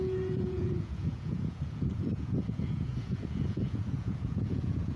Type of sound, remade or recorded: remade